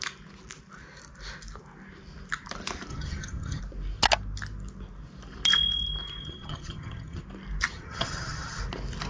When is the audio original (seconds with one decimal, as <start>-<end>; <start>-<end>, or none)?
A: 0.0-2.9; 3.6-6.2; 7.2-7.7; 8.6-9.1